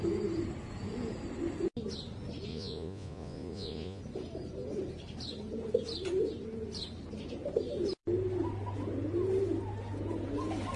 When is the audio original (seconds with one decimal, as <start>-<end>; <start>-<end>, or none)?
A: 0.0-2.5; 4.0-10.8